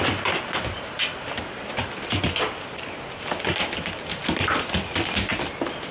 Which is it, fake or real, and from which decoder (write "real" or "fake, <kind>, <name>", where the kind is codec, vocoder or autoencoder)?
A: real